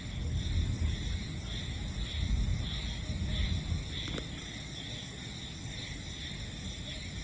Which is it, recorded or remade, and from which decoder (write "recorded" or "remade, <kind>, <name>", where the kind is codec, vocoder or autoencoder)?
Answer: recorded